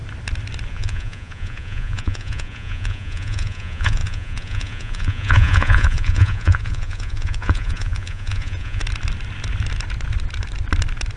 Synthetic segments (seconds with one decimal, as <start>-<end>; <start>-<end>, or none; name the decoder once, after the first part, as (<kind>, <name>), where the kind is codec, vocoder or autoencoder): 0.7-8.8 (vocoder, Vocos)